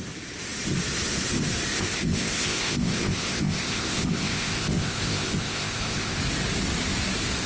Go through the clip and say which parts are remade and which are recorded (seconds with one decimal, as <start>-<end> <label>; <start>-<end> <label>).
0.0-1.7 recorded; 1.7-6.2 remade; 6.2-7.5 recorded